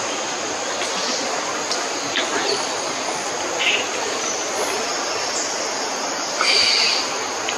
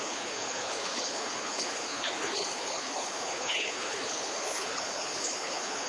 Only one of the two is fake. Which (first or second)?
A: second